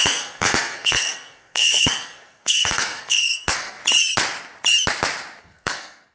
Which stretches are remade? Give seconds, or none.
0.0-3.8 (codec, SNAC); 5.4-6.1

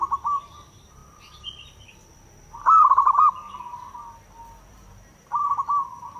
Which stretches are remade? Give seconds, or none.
0.0-1.0 (vocoder, BigVGAN v2); 4.7-6.2

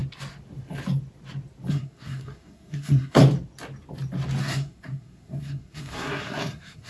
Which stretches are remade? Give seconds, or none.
1.7-3.2 (codec, SNAC); 4.4-6.9

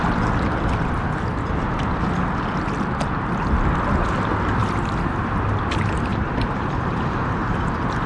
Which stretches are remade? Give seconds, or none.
4.6-8.1 (vocoder, BigVGAN v2)